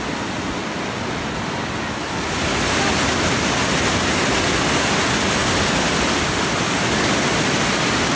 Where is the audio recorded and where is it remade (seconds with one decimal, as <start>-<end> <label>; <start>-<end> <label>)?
0.0-8.2 recorded

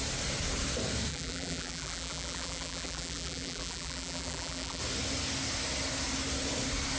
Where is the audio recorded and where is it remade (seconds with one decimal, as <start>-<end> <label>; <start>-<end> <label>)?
0.0-1.1 recorded; 1.1-4.8 remade; 4.8-7.0 recorded